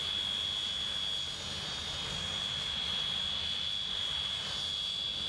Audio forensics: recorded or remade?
recorded